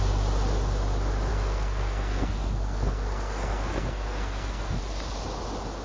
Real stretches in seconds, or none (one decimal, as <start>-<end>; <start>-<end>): 0.0-1.3; 4.8-5.8

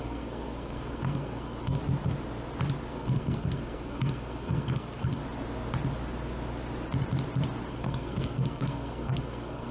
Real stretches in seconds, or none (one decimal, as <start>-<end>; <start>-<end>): 1.8-2.9; 5.2-7.7

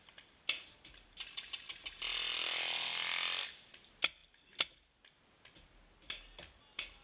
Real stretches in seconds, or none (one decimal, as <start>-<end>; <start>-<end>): 0.0-7.0

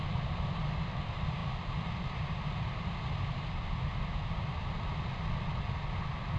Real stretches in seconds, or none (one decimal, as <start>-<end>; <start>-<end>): 0.0-6.4

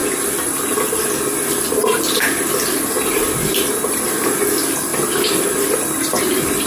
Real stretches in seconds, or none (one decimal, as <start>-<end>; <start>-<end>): 0.0-6.7

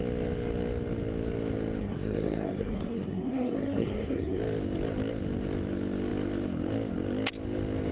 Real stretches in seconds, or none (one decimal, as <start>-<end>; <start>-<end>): 0.0-1.8; 4.4-7.9

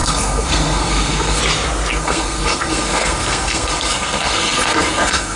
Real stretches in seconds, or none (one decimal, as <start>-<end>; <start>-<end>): 1.4-1.9